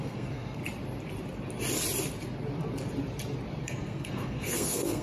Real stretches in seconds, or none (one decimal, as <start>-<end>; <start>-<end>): 0.6-3.6

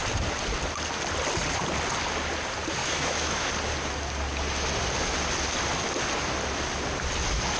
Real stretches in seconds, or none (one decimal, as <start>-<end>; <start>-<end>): 0.0-2.8; 3.5-7.6

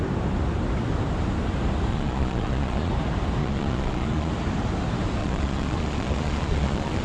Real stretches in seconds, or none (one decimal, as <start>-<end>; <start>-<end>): 0.0-1.9; 2.9-3.4; 4.3-5.2

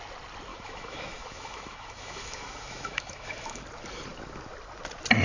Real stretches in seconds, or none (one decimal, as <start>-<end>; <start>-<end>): 0.0-0.5; 3.6-5.2

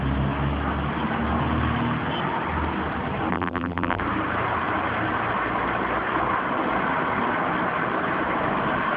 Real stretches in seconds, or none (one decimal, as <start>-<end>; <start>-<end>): 0.0-3.3; 4.0-9.0

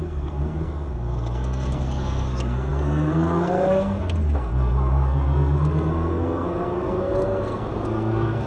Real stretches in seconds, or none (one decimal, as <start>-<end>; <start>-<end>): none